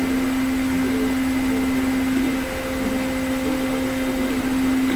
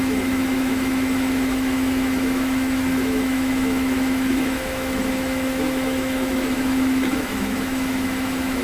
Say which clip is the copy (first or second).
second